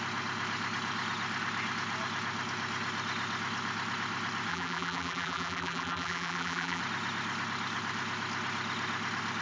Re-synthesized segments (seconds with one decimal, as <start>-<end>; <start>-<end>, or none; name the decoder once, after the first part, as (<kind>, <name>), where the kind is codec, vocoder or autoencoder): 4.5-6.8 (vocoder, BigVGAN v2)